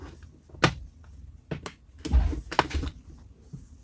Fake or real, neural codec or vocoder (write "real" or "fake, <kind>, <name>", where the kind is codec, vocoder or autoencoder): real